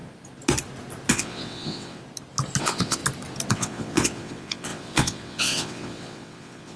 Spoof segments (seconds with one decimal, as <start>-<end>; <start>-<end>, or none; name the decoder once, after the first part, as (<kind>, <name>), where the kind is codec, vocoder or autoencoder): 1.1-2.0 (vocoder, WaveNeXt); 2.6-3.0; 3.5-6.8